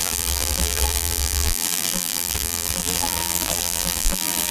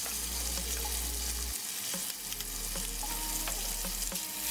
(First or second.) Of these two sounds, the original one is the second